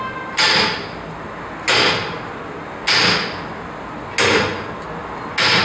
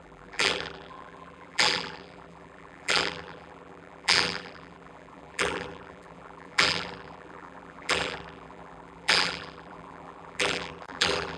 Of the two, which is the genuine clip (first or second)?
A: first